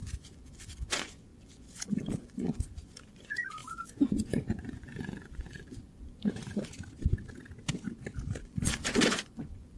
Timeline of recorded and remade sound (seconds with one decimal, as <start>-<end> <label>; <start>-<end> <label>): 0.0-6.7 remade; 6.7-8.4 recorded; 8.4-9.8 remade